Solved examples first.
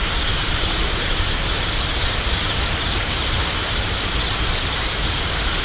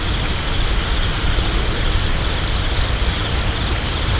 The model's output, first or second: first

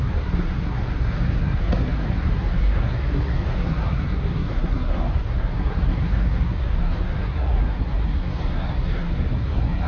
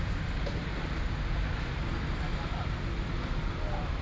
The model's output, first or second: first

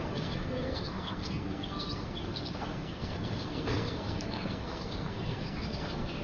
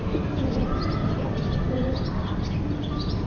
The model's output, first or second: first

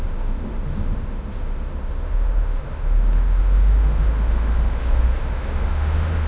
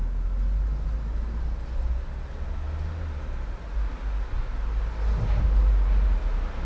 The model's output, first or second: first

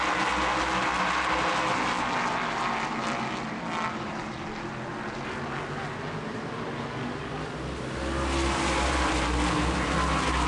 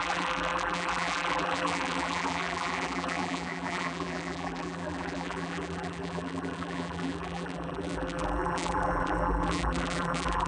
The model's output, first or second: second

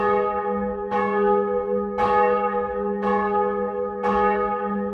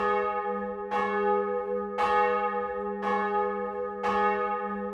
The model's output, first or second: first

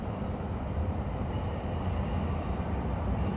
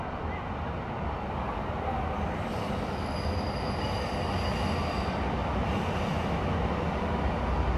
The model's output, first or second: first